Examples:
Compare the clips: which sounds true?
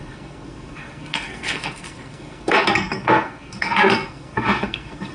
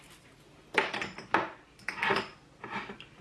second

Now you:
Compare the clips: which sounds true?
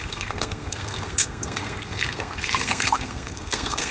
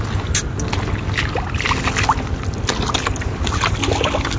second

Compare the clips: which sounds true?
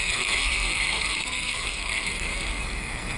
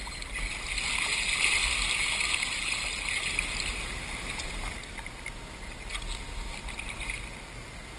second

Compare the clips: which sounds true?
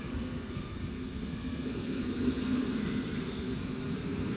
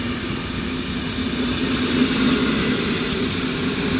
second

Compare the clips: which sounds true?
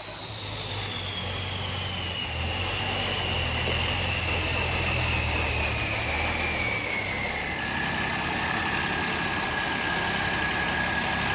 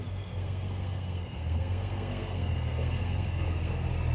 first